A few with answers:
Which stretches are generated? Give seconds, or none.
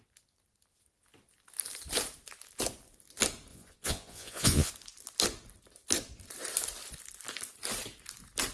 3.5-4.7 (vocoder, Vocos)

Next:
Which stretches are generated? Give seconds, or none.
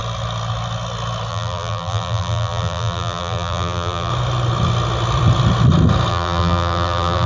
1.3-4.1 (vocoder, BigVGAN v2); 6.1-7.3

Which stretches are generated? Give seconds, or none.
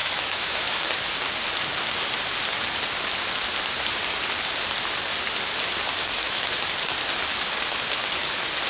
0.0-0.9 (autoencoder, DAC-VAE); 6.0-6.7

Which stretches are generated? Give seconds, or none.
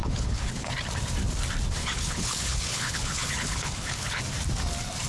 0.0-0.7 (codec, HILCodec); 1.8-4.2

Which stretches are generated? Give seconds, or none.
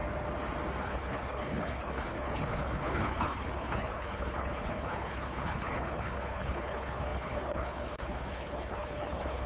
0.8-9.5 (codec, HILCodec)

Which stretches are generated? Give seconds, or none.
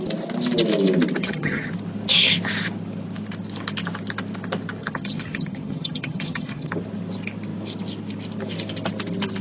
1.2-1.7 (vocoder, HiFi-GAN); 4.8-6.7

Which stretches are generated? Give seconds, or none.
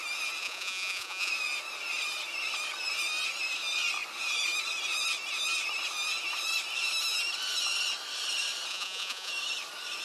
0.4-1.3 (vocoder, Vocos); 8.7-9.3